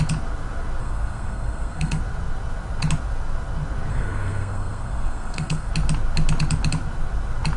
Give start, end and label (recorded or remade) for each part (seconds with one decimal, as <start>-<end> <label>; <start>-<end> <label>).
0.0-0.8 recorded; 0.8-2.0 remade; 2.0-3.9 recorded; 3.9-5.7 remade; 5.7-7.6 recorded